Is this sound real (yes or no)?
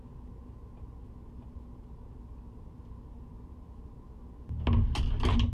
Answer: yes